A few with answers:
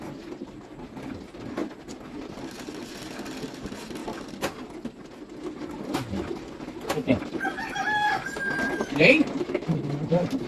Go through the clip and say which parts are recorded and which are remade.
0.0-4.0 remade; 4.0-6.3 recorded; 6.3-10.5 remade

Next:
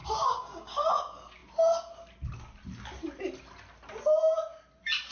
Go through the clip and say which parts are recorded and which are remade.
0.0-0.9 remade; 0.9-5.1 recorded

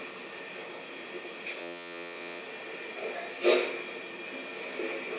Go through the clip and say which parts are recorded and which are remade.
0.0-1.6 recorded; 1.6-2.4 remade; 2.4-5.2 recorded

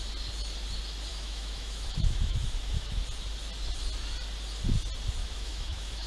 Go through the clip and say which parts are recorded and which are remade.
0.0-1.1 recorded; 1.1-3.0 remade; 3.0-5.2 recorded; 5.2-6.1 remade